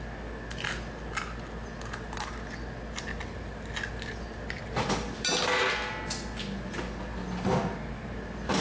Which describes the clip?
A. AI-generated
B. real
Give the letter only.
B